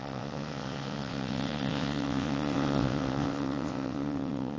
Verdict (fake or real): fake